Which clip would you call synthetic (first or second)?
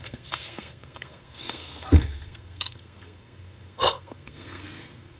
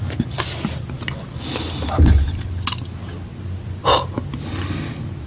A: first